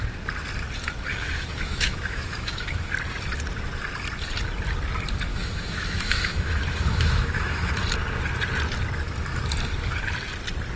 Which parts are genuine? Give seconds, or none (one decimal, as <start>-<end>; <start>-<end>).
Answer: 0.0-1.1; 2.9-5.3; 7.7-10.8